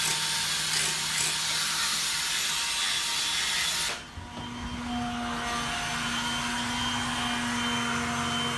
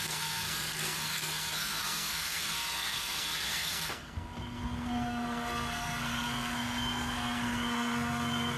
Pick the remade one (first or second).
second